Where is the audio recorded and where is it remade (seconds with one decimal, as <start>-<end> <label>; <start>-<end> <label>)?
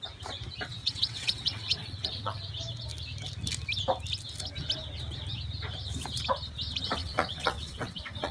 0.0-0.8 recorded; 0.8-2.4 remade; 2.4-7.0 recorded; 7.0-8.3 remade